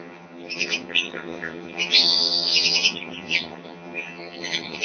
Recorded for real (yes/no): no